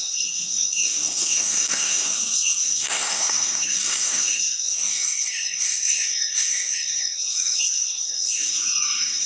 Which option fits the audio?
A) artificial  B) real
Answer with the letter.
A